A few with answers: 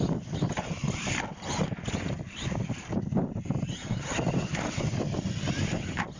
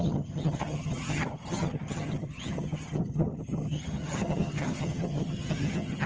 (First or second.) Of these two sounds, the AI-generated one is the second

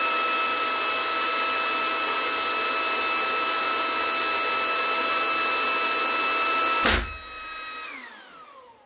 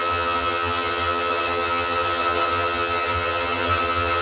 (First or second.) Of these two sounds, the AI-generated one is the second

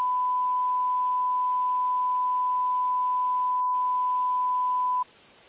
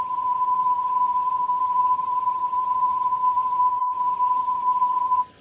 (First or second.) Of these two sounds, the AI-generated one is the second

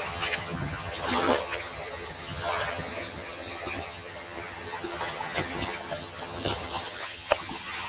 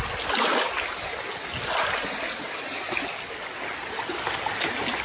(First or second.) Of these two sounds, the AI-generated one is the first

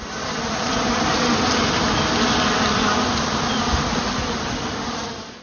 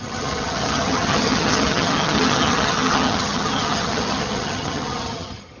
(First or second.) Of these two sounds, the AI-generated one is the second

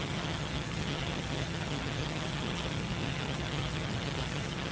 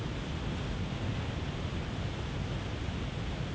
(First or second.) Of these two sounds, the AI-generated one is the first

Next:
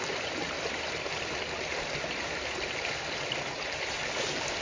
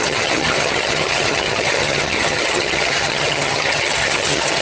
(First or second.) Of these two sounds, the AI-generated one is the second